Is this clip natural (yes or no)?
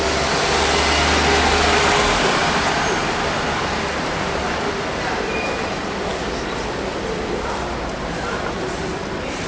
yes